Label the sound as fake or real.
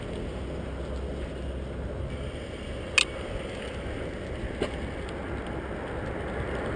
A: real